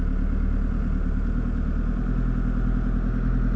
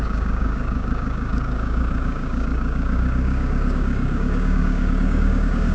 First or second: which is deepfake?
second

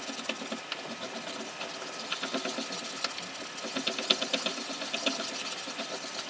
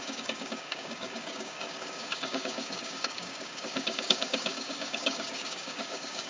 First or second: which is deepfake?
second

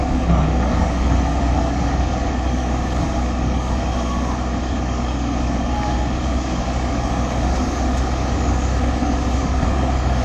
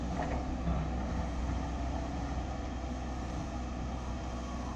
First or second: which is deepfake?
first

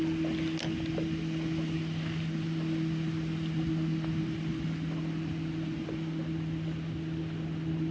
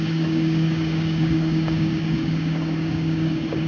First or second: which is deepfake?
second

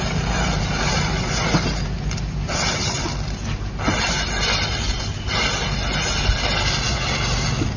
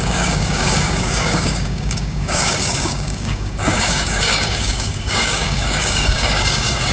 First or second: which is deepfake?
second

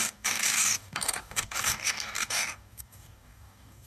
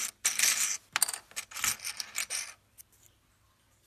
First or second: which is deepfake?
first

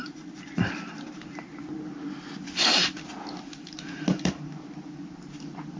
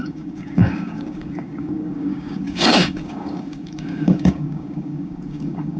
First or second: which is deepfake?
second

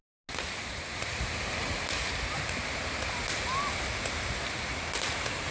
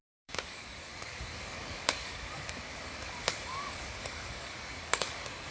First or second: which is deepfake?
second